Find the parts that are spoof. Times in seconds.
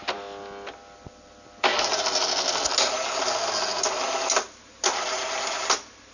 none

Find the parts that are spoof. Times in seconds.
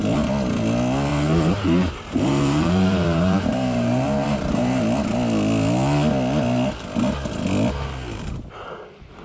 1.1-4.8 (vocoder, BigVGAN v2)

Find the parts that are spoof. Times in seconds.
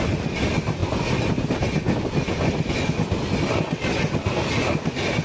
none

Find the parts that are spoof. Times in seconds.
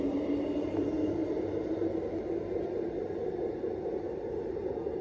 none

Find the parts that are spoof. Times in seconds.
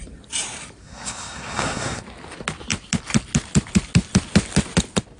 0.8-2.0 (codec, SNAC)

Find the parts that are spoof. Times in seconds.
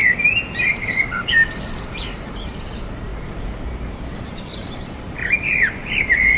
0.7-6.4 (vocoder, BigVGAN v2)